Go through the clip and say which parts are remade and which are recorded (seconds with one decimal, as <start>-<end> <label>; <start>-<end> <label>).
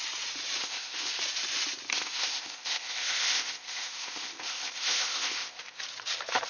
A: 0.0-0.6 recorded; 0.6-1.2 remade; 1.2-1.9 recorded; 1.9-5.8 remade; 5.8-6.5 recorded